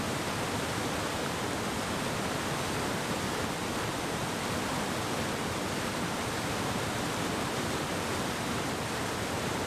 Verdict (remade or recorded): remade